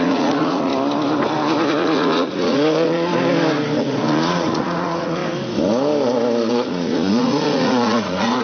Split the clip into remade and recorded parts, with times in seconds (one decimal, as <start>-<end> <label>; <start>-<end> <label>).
0.0-0.7 remade; 0.7-1.7 recorded; 1.7-3.1 remade; 3.1-3.8 recorded; 3.8-5.2 remade; 5.2-6.5 recorded; 6.5-8.4 remade